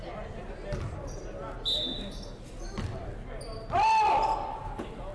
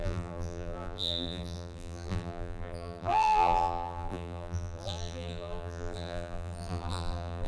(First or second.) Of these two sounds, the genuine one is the first